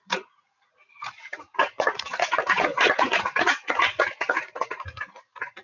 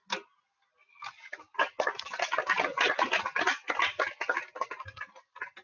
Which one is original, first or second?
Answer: second